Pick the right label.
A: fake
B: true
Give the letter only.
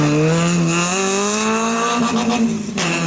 B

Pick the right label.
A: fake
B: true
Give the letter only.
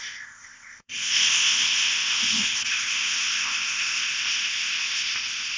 A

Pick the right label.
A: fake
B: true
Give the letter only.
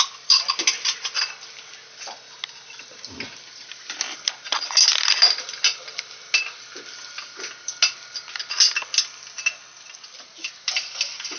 B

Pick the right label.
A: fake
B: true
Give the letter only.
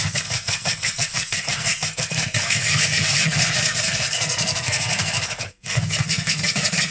A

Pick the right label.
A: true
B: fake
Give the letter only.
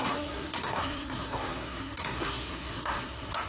B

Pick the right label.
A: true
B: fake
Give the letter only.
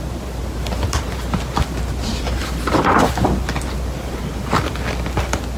A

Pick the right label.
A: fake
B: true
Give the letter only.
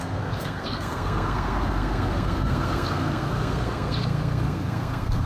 A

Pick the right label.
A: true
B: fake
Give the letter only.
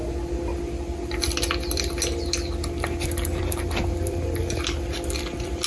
A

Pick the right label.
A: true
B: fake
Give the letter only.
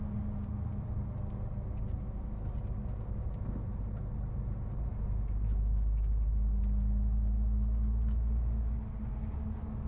A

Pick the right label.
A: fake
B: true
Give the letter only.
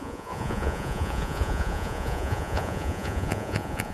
A